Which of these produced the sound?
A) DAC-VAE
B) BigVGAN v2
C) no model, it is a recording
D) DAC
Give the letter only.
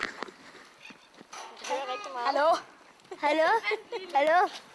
C